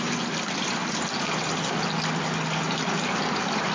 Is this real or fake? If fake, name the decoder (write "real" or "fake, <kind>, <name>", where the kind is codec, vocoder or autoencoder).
real